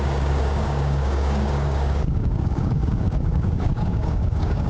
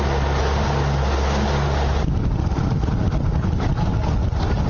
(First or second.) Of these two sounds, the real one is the second